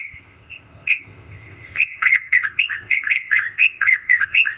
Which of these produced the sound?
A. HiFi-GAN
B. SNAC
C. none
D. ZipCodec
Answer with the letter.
D